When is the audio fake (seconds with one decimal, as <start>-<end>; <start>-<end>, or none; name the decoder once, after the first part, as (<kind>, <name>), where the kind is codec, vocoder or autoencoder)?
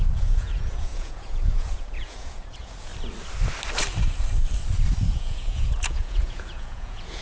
0.0-2.9 (vocoder, Vocos); 5.1-7.2